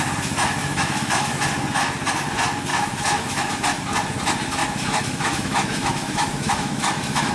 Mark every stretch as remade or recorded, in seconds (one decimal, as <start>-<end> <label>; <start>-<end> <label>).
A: 0.0-0.6 recorded; 0.6-1.4 remade; 1.4-2.7 recorded; 2.7-3.5 remade; 3.5-4.6 recorded; 4.6-7.3 remade

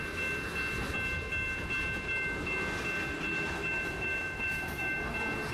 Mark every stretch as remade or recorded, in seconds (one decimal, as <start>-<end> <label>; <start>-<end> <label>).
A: 0.0-3.3 recorded; 3.3-5.1 remade; 5.1-5.5 recorded

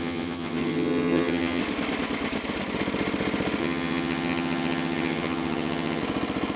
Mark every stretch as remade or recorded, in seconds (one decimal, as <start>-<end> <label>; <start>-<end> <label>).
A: 0.0-1.6 remade; 1.6-3.6 recorded; 3.6-6.0 remade; 6.0-6.6 recorded

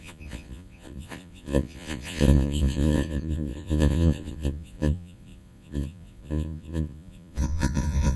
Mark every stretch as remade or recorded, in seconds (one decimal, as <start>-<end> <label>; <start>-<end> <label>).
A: 0.0-8.2 remade